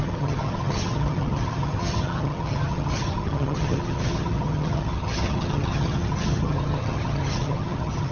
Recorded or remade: remade